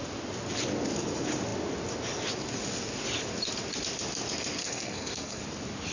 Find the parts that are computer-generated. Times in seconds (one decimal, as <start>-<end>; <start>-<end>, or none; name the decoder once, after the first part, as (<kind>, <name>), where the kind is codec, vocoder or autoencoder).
4.6-5.4 (codec, SNAC)